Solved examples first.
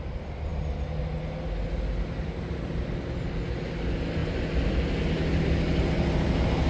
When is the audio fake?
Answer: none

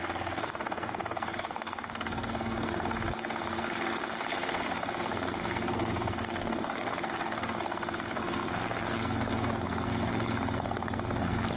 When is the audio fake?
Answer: 0.0-11.6 (codec, SNAC)

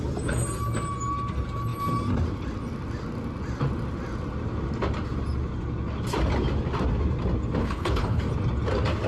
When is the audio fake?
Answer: 7.6-8.2 (codec, HILCodec)

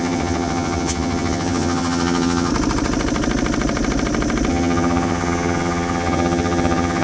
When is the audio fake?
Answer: 0.0-2.5 (vocoder, HiFi-GAN); 4.5-7.0

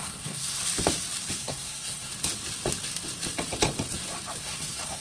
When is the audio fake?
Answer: 0.0-0.6 (codec, SNAC); 1.3-2.1; 4.4-5.0

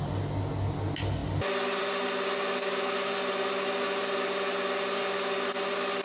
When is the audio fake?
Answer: none

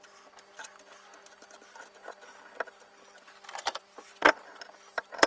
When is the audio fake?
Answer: 0.0-0.6 (vocoder, BigVGAN v2); 2.8-4.1; 4.7-5.3

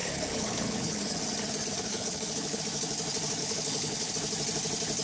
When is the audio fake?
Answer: 0.0-1.2 (codec, HILCodec); 1.9-2.6; 3.4-4.1